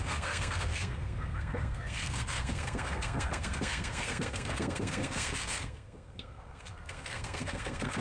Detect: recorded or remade remade